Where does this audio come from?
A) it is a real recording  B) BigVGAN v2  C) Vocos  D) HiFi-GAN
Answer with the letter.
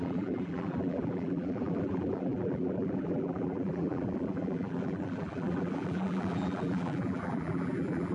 B